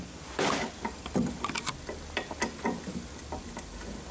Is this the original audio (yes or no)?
yes